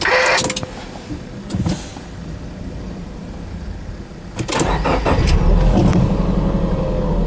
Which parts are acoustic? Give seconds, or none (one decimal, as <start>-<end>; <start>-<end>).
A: 0.0-1.9; 5.0-7.3